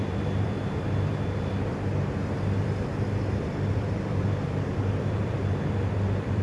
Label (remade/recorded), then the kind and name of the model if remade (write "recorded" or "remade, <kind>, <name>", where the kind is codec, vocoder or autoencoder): remade, vocoder, BigVGAN v2